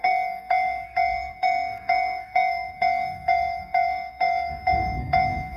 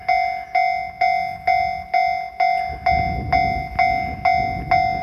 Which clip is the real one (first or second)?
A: second